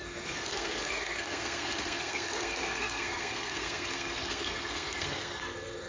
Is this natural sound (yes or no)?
no